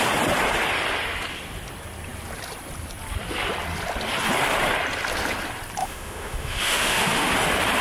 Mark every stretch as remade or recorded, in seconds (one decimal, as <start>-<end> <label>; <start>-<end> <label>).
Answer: 0.0-5.8 recorded; 5.8-7.3 remade; 7.3-7.8 recorded